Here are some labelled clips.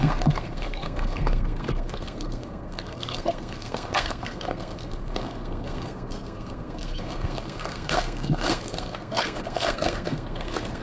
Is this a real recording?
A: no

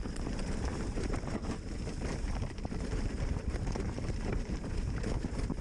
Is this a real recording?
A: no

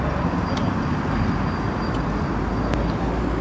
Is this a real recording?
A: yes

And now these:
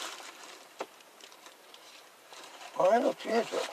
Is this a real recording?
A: no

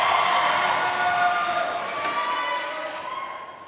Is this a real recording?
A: yes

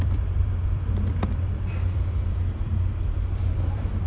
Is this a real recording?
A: no